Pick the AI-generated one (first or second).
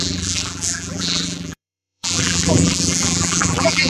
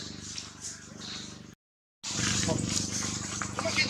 first